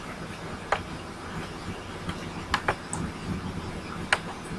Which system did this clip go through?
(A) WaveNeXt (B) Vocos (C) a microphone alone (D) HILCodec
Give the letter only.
C